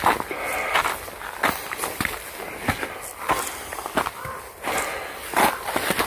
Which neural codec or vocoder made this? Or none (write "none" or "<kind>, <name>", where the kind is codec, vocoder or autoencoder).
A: none